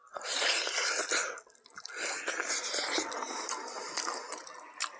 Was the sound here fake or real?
real